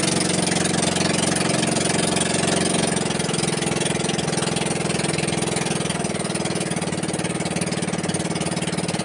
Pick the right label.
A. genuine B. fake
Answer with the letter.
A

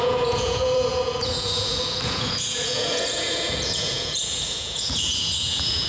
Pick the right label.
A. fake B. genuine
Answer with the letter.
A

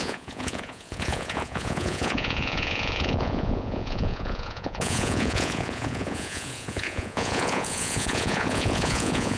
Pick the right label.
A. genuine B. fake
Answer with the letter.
B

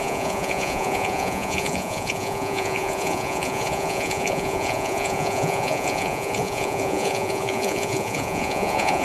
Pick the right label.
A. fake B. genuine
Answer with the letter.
A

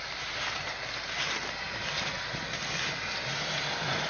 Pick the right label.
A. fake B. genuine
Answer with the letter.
B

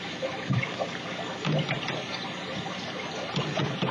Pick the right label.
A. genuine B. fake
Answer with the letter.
A